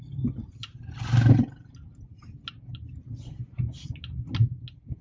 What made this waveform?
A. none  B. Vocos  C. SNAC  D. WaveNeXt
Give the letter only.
A